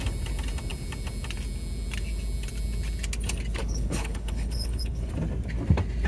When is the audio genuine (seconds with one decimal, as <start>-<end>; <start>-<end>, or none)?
0.0-3.6; 5.1-6.1